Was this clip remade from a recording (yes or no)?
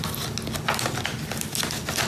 no